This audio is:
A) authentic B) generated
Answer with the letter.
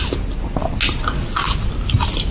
A